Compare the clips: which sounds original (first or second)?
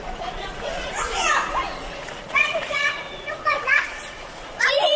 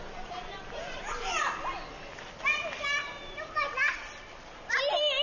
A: second